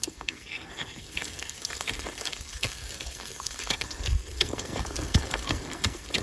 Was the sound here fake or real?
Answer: fake